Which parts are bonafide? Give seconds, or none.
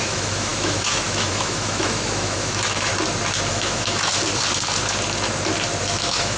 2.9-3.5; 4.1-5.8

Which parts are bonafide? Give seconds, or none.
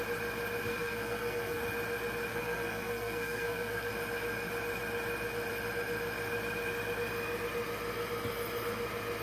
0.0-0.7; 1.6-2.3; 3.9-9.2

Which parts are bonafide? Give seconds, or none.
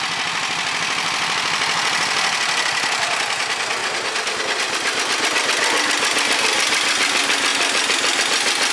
0.0-8.7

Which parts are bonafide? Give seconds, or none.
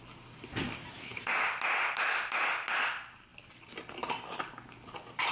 0.0-5.3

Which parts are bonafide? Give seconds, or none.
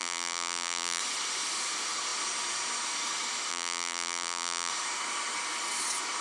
1.0-3.5; 4.7-6.2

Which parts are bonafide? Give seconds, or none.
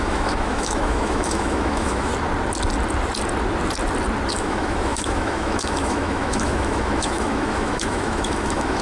2.1-4.3